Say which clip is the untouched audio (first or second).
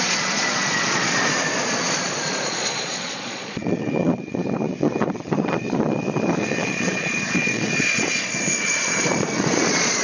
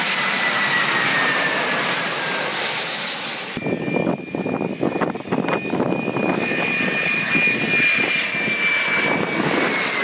second